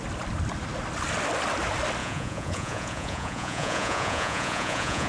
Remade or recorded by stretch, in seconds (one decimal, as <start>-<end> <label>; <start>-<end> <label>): 0.0-2.0 recorded; 2.0-5.1 remade